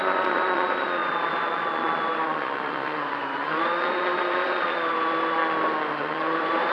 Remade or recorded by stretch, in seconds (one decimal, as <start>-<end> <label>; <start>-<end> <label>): 0.0-5.4 remade; 5.4-6.0 recorded; 6.0-6.7 remade